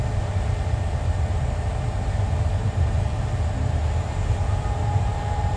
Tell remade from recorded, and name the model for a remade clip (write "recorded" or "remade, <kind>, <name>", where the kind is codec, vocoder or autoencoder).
remade, vocoder, BigVGAN v2